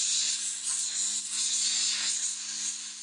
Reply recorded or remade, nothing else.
recorded